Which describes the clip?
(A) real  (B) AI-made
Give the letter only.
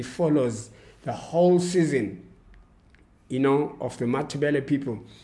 A